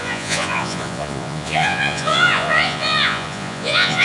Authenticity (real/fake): fake